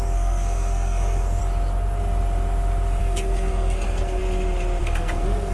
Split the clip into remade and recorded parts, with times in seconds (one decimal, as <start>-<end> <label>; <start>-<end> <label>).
0.0-1.4 remade; 1.4-3.0 recorded; 3.0-4.2 remade; 4.2-4.8 recorded; 4.8-5.5 remade